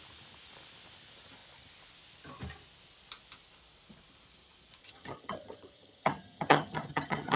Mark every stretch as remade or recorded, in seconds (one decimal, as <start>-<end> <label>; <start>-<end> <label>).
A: 0.0-4.8 recorded; 4.8-7.4 remade